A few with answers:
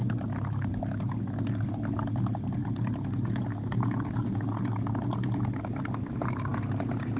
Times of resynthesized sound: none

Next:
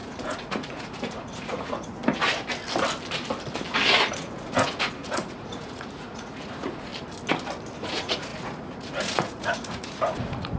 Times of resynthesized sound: 0.0-2.0 (vocoder, Vocos); 4.1-6.9; 7.8-10.6

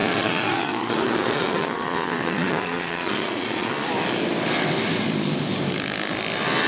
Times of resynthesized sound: 0.0-3.7 (vocoder, Vocos)

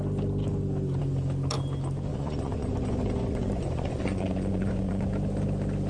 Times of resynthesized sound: 2.1-5.1 (vocoder, Vocos)

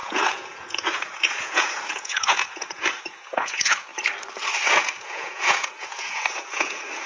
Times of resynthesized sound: 0.0-3.9 (vocoder, Vocos); 4.7-7.1

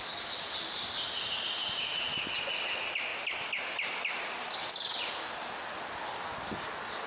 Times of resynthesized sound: none

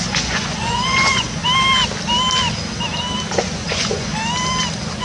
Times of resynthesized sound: 0.0-1.4 (vocoder, Vocos); 3.3-4.1